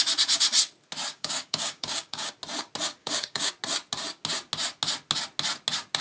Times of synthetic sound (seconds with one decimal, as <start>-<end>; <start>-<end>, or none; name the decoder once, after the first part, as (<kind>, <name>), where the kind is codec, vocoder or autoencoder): 1.1-2.3 (codec, DAC); 3.0-3.5